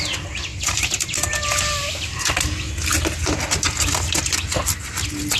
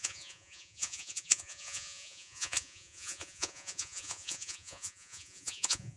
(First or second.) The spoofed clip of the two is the second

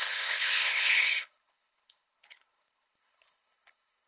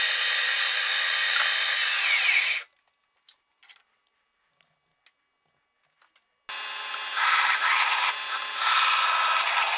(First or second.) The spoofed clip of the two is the first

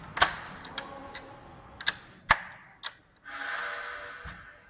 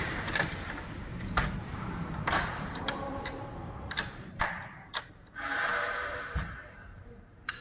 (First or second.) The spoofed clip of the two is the second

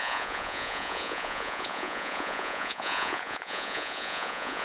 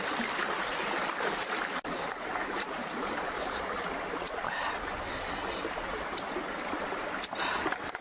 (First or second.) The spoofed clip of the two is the first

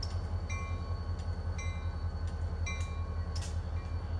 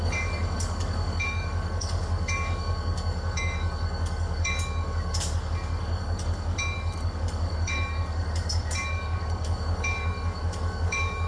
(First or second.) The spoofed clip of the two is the second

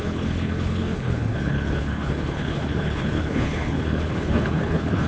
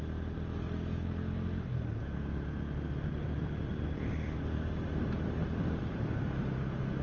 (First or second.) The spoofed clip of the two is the first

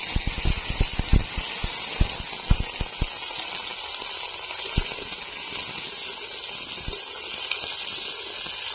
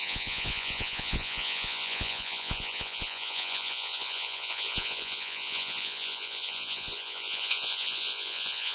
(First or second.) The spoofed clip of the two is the second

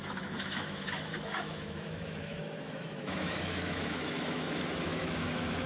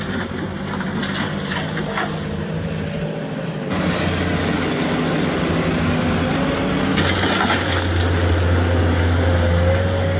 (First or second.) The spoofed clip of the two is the first